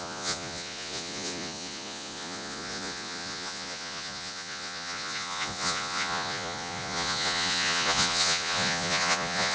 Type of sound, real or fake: fake